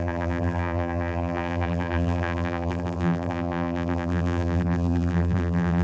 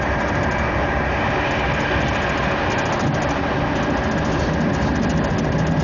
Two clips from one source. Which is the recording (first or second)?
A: second